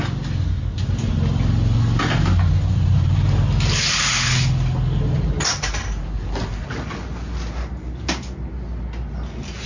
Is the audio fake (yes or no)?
no